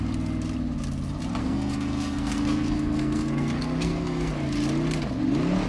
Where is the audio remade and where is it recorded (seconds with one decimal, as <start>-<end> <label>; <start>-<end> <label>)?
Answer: 0.0-1.4 recorded; 1.4-4.3 remade; 4.3-5.7 recorded